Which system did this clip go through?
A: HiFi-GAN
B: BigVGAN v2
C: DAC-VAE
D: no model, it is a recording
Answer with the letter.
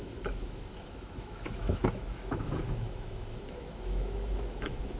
C